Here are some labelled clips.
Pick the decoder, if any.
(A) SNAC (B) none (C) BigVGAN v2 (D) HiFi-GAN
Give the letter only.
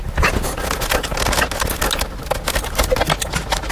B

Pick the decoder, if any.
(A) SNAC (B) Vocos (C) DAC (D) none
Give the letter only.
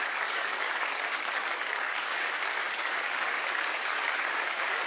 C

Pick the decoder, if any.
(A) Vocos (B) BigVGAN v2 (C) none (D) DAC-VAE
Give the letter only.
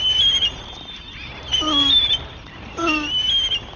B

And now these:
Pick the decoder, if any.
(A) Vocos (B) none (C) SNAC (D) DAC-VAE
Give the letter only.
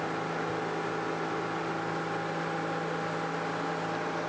B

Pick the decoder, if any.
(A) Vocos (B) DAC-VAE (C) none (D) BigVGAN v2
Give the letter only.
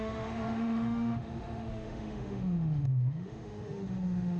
B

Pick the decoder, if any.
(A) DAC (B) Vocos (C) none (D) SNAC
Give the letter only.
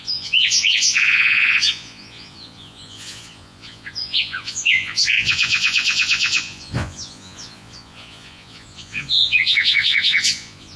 B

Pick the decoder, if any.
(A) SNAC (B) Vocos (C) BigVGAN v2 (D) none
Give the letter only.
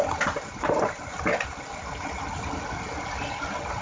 D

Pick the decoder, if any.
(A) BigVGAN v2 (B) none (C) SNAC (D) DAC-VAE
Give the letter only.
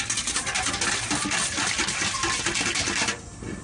B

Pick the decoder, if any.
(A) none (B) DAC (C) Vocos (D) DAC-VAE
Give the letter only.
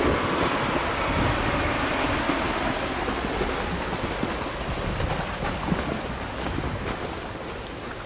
A